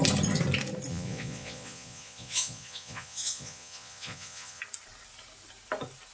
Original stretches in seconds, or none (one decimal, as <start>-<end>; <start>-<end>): 0.0-0.9; 4.6-6.1